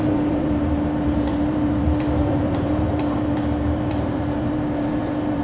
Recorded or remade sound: remade